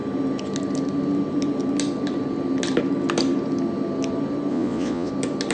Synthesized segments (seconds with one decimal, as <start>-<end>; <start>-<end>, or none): 4.5-5.1